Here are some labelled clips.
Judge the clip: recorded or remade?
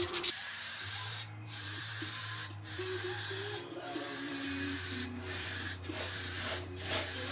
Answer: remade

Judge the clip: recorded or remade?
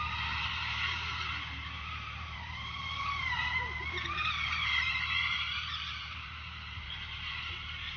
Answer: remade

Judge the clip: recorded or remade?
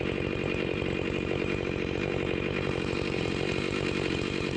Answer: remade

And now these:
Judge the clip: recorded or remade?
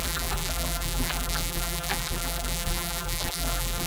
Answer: remade